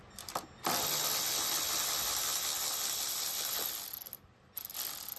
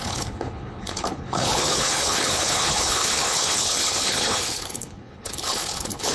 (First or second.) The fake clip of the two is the second